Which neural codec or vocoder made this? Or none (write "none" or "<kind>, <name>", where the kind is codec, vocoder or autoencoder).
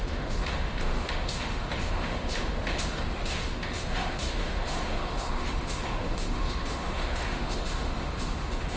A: autoencoder, DAC-VAE